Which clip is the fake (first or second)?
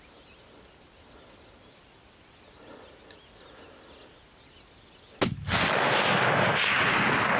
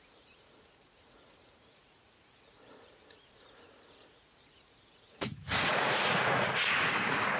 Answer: second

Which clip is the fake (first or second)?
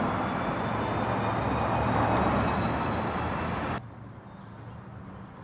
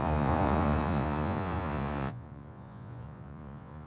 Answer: second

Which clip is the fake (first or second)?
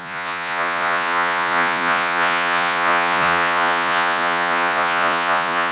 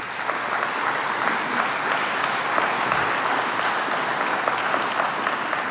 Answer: first